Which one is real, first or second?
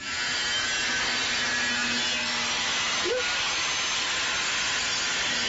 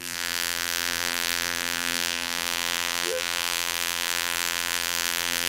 first